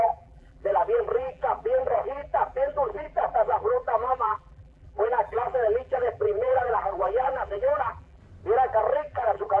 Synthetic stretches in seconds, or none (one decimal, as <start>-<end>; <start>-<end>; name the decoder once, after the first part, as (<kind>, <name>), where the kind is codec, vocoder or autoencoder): 0.0-8.2 (vocoder, BigVGAN v2); 8.8-9.6